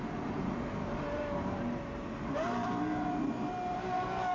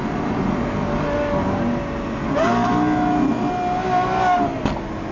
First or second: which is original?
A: second